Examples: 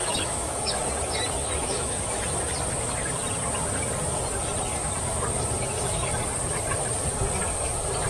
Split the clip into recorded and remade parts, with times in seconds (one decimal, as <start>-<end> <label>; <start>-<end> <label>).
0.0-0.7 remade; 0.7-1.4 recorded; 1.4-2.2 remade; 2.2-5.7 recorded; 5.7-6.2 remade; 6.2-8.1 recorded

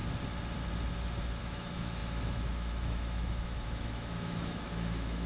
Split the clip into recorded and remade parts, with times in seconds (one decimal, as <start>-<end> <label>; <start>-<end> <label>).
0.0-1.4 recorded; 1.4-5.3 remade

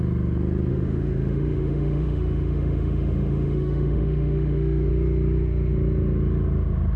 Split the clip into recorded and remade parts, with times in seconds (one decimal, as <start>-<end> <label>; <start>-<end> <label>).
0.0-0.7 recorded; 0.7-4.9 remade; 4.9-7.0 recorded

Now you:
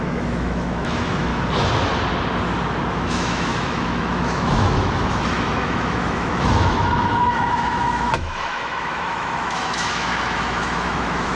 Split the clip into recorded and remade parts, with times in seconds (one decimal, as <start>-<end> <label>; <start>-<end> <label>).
0.0-1.3 remade; 1.3-2.9 recorded; 2.9-11.4 remade